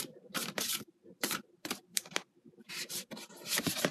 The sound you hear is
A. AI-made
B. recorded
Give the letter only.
A